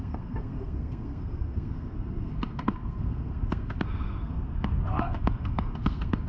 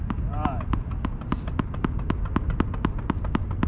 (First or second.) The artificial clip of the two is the first